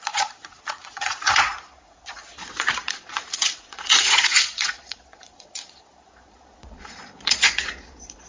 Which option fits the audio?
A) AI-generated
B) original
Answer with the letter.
A